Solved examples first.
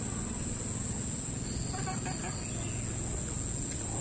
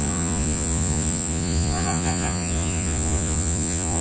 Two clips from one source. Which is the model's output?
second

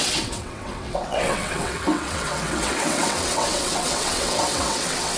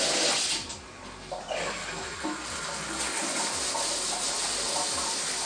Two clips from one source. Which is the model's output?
first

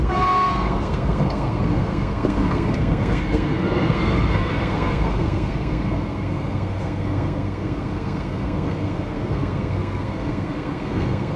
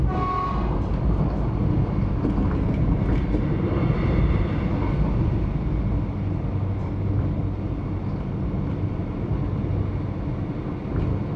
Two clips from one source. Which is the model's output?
first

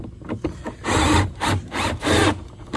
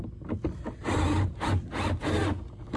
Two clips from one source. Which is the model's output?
first